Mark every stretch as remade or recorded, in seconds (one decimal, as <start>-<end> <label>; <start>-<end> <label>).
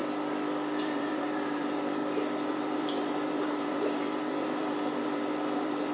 0.0-0.8 recorded; 0.8-2.0 remade; 2.0-2.5 recorded; 2.5-5.9 remade